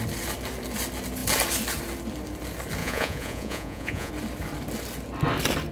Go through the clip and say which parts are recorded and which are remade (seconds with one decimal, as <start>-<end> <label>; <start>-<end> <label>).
0.0-2.8 recorded; 2.8-4.1 remade; 4.1-5.7 recorded